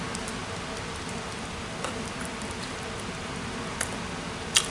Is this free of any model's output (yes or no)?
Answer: no